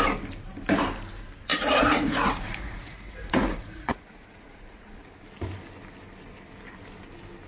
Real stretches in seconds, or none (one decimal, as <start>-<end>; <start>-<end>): 0.0-1.5; 5.1-7.5